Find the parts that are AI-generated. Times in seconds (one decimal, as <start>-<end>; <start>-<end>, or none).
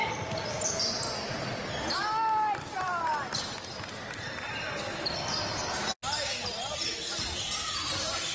none